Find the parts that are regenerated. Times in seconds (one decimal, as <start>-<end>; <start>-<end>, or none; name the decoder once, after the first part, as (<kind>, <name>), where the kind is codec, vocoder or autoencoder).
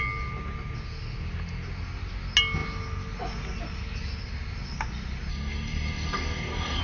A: 5.3-6.8 (codec, DAC)